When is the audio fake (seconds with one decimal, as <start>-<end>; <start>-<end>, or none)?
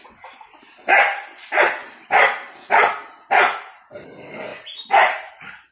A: 1.8-2.9